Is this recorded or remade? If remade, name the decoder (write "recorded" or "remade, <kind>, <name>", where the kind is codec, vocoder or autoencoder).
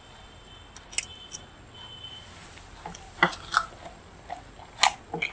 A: recorded